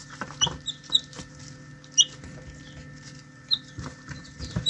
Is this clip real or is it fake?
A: real